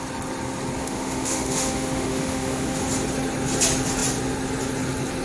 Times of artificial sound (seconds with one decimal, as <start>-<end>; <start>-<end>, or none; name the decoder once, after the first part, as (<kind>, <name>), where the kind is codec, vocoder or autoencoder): 0.8-2.8 (autoencoder, DAC-VAE)